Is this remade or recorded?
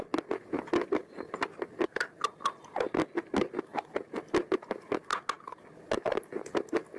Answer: recorded